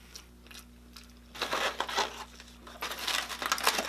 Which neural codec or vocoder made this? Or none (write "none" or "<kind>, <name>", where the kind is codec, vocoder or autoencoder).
none